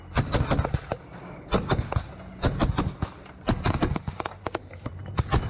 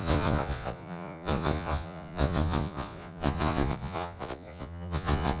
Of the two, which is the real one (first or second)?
first